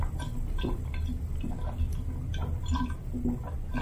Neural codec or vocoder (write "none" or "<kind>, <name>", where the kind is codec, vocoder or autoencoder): none